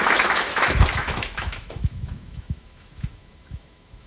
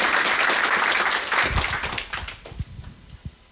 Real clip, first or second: second